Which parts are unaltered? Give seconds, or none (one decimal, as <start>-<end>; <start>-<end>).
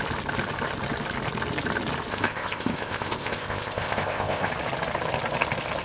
0.0-2.1; 4.5-5.8